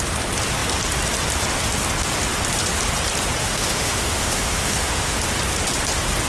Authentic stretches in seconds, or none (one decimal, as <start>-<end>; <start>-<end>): 0.0-3.4; 5.2-6.3

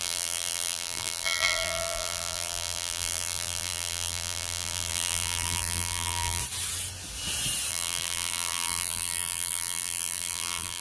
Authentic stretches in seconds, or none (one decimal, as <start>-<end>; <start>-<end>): 6.4-7.7

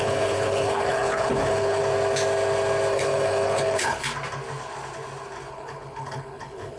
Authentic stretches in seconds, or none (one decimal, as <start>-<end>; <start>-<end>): 1.8-2.9; 4.1-5.5

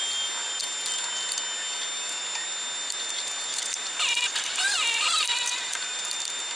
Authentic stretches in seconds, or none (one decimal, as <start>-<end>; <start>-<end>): 0.0-3.5; 5.8-6.6

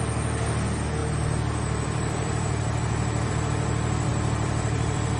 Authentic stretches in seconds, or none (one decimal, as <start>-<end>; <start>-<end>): 0.0-1.0; 3.3-4.1

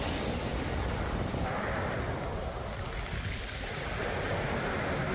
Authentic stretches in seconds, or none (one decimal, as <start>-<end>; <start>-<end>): 0.0-5.1